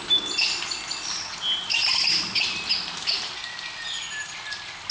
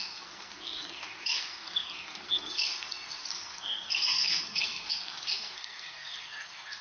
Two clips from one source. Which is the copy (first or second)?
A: second